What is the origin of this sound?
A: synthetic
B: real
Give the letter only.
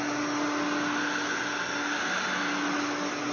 B